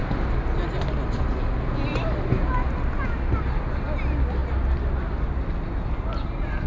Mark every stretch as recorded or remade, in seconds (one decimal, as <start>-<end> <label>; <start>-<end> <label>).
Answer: 0.0-6.7 recorded